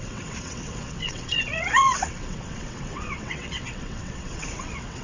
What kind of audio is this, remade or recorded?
remade